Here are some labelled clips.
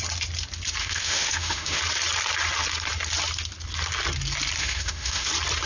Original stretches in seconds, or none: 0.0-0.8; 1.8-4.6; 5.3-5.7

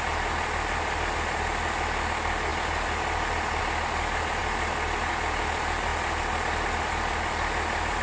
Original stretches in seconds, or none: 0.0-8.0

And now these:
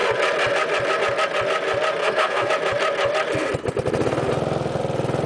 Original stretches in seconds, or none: 0.0-2.0; 2.5-5.3

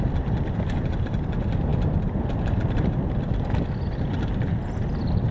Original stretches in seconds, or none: 0.0-5.3